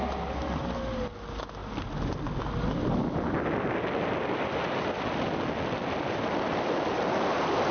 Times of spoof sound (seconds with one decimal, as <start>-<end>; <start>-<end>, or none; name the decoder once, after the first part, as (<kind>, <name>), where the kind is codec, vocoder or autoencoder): 0.0-7.7 (vocoder, BigVGAN v2)